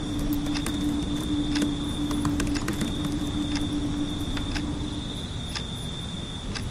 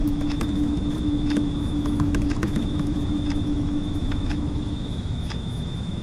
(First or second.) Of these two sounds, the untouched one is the first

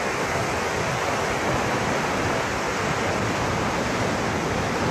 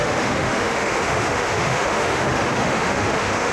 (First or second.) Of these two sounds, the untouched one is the first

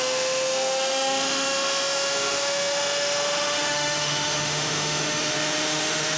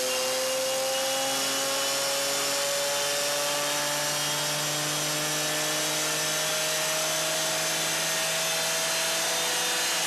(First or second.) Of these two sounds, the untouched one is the second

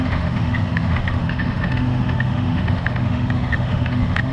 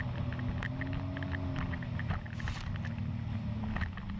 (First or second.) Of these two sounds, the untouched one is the second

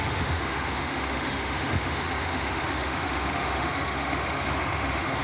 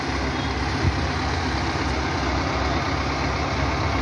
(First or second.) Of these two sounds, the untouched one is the second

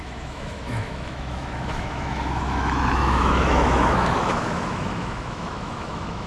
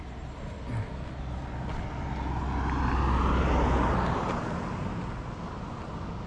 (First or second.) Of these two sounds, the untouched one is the second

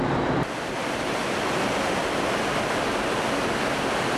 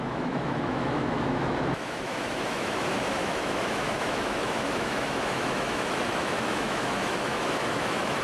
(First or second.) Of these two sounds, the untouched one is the first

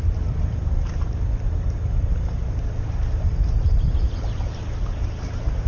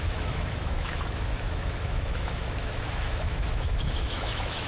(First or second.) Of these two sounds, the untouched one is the first